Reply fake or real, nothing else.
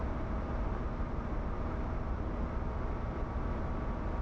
real